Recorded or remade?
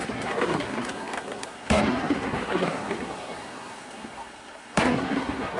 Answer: remade